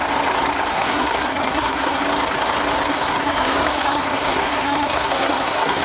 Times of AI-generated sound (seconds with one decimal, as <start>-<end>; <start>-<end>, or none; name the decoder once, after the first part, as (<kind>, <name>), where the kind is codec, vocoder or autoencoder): 0.7-2.0 (codec, SNAC); 2.9-5.8